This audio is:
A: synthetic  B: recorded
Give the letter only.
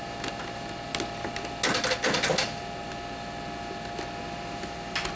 B